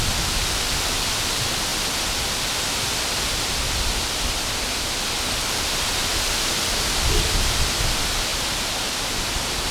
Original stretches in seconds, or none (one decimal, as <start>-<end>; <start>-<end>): 8.3-8.8